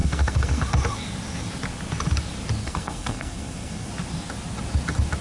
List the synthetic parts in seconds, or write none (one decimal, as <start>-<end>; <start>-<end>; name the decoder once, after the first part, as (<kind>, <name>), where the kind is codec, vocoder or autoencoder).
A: 0.0-0.7 (codec, SNAC); 2.6-3.9